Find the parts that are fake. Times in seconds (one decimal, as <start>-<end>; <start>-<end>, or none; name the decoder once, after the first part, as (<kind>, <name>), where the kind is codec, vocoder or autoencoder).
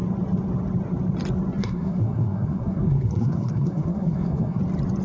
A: 1.6-4.6 (codec, SNAC)